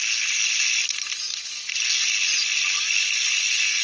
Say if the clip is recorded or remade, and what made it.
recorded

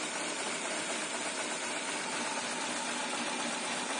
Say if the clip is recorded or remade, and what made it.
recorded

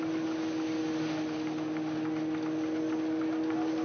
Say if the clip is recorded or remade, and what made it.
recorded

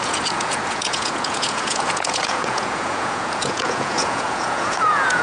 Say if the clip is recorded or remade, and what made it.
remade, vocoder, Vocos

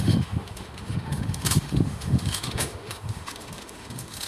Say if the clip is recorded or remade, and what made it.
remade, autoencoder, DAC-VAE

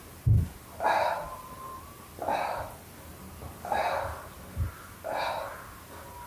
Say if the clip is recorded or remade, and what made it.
recorded